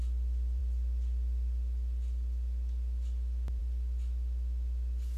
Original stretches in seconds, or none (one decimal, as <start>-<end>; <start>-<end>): 0.0-5.2